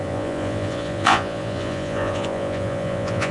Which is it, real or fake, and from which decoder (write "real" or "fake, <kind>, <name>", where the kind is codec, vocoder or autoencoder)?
fake, vocoder, Vocos